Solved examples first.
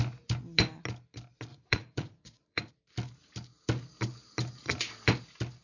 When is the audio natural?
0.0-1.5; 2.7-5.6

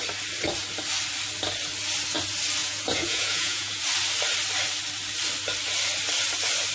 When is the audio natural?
0.0-2.6; 3.8-6.7

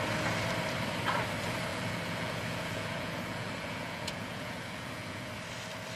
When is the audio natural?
0.0-1.7; 5.3-6.0